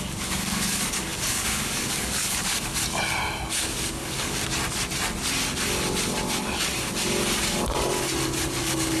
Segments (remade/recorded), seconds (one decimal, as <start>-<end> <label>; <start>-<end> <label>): 0.0-2.8 remade; 2.8-3.5 recorded; 3.5-4.4 remade; 4.4-8.6 recorded; 8.6-9.0 remade